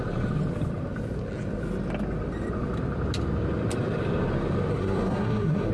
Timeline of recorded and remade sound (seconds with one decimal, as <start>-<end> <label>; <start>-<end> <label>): 0.0-4.7 recorded; 4.7-5.7 remade